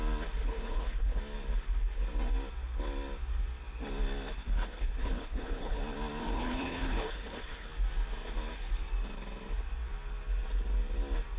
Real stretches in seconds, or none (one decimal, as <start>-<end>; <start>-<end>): 0.0-0.4; 1.2-4.4; 5.8-6.2; 7.7-11.4